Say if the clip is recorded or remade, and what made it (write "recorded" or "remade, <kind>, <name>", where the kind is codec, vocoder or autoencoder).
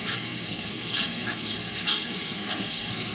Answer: remade, codec, SNAC